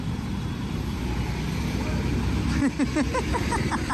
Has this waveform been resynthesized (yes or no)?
no